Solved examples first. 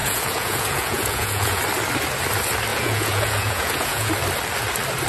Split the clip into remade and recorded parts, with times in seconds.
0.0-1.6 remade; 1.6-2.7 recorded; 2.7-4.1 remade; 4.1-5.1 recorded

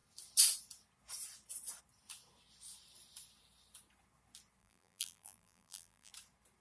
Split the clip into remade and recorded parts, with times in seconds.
0.0-4.6 recorded; 4.6-6.1 remade; 6.1-6.6 recorded